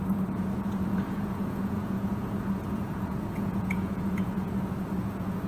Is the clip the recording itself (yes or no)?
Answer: no